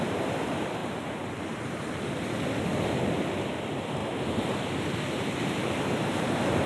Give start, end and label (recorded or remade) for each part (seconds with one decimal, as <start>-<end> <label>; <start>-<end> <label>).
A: 0.0-0.8 recorded; 0.8-1.9 remade; 1.9-4.0 recorded; 4.0-6.7 remade